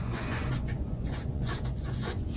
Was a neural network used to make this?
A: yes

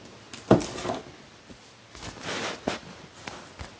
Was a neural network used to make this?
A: no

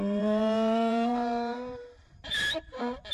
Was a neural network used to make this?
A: yes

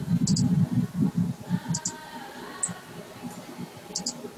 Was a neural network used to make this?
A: no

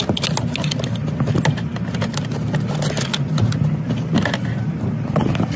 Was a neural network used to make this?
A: no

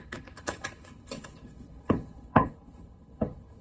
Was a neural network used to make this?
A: yes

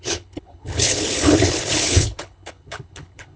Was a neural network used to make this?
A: yes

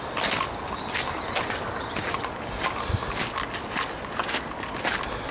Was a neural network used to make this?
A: no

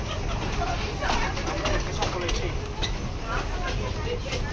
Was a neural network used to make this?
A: no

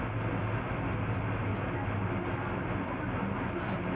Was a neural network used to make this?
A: no